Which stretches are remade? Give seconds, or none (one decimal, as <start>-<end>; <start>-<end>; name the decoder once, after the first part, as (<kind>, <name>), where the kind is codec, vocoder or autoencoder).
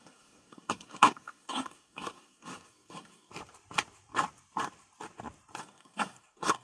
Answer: 0.0-3.3 (codec, SNAC); 5.6-6.6